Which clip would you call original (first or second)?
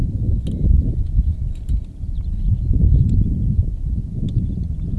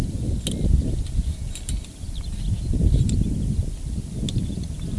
second